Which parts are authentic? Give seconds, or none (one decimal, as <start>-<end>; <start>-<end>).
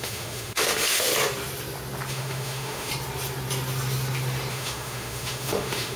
1.1-2.1; 2.9-4.5